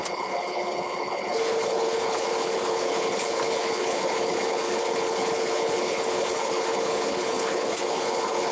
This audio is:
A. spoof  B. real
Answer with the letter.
A